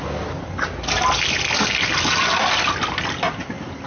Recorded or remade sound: recorded